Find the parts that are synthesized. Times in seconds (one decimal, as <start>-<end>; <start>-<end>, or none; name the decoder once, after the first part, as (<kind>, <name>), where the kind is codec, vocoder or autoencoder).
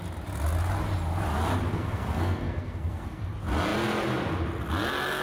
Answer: 1.7-3.3 (codec, SNAC)